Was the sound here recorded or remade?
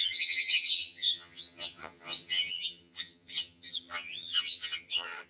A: remade